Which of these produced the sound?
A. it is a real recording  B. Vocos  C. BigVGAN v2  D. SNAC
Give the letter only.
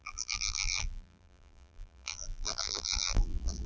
C